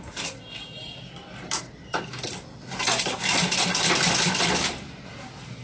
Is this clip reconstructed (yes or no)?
no